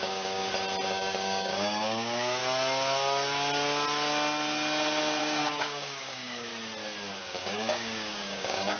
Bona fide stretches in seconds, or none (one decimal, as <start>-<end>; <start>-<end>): 0.4-0.9; 2.4-5.2; 6.5-7.2